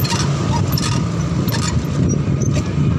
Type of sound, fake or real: real